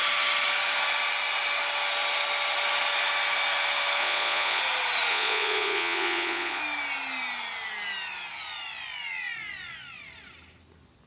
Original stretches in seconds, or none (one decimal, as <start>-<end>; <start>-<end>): 0.0-4.0; 4.6-5.1; 6.6-11.1

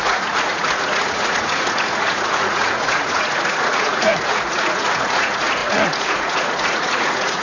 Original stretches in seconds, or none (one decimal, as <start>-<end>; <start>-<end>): none

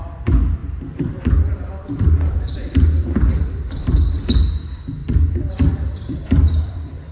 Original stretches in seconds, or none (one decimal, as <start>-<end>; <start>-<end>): none

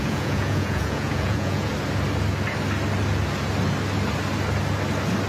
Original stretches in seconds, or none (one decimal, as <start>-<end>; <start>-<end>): 1.7-5.3

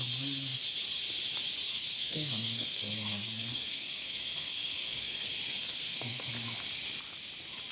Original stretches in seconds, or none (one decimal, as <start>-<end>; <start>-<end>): 0.0-1.7; 6.3-7.7